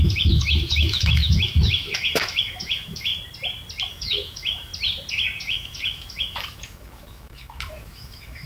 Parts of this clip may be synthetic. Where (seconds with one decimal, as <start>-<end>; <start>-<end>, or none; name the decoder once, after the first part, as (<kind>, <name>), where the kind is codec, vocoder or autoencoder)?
0.0-3.1 (autoencoder, DAC-VAE); 3.9-4.7; 5.4-8.5